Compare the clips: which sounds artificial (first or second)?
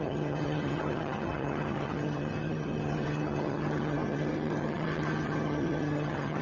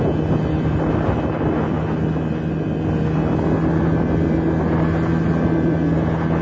first